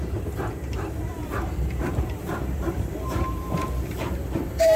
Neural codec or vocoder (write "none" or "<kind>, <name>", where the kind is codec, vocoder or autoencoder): vocoder, BigVGAN v2